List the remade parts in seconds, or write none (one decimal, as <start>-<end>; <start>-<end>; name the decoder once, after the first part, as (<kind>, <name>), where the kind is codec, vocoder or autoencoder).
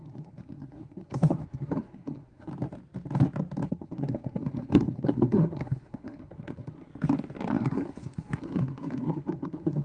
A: 0.0-2.5 (codec, SNAC); 3.7-6.9; 7.5-9.8